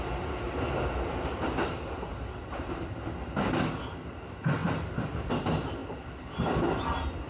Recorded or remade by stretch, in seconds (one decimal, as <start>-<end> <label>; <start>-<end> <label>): 0.0-7.3 recorded